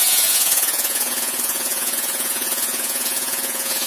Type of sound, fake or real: fake